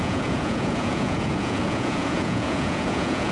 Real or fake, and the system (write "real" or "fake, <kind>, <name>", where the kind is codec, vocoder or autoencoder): fake, vocoder, Vocos